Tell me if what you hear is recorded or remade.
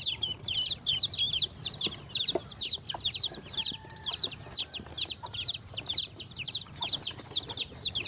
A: remade